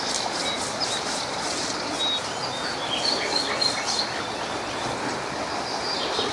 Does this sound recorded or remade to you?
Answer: recorded